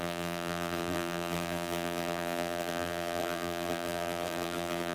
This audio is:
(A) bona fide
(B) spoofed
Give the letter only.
B